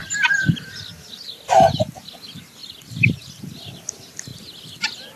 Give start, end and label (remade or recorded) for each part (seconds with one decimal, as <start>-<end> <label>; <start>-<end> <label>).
0.0-2.6 recorded; 2.6-3.2 remade; 3.2-5.2 recorded